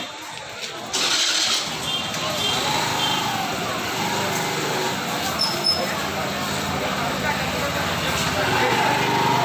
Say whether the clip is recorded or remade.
recorded